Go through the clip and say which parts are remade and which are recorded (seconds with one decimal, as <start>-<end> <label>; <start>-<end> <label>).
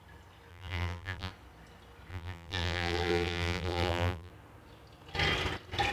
0.0-0.5 recorded; 0.5-1.3 remade; 1.3-2.1 recorded; 2.1-4.3 remade; 4.3-5.9 recorded